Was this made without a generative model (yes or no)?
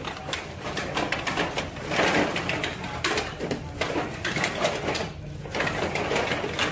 no